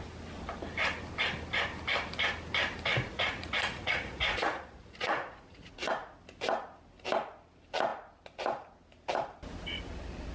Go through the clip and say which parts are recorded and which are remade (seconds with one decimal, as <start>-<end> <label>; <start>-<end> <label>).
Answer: 0.0-2.9 recorded; 2.9-6.1 remade; 6.1-10.3 recorded